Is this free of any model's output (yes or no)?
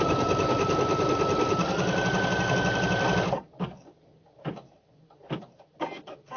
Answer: yes